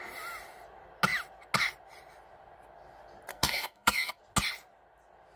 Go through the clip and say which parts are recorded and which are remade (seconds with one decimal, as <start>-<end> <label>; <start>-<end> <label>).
0.0-3.3 recorded; 3.3-4.2 remade; 4.2-5.4 recorded